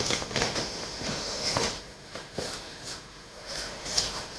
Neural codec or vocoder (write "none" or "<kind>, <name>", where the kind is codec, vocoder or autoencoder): autoencoder, DAC-VAE